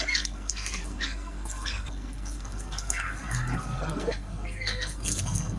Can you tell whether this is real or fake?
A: fake